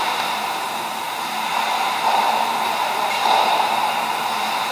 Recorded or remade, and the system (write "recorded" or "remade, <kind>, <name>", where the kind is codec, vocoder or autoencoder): remade, vocoder, BigVGAN v2